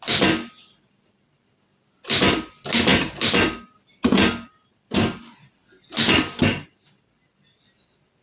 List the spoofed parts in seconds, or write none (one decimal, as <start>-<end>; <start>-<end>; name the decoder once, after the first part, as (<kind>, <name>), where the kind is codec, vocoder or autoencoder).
none